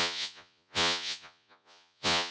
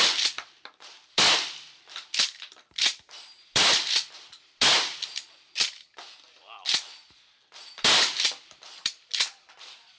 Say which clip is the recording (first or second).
second